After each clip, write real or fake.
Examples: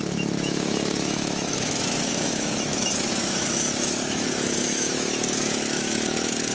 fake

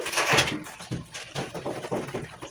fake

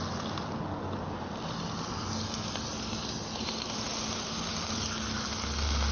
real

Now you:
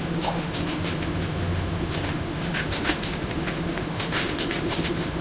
fake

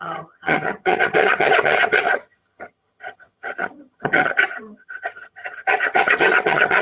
fake